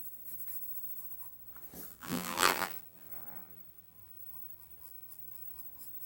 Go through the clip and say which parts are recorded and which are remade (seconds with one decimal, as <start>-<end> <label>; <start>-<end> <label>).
0.0-1.9 recorded; 1.9-5.6 remade; 5.6-6.1 recorded